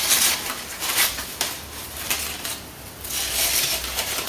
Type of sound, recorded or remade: recorded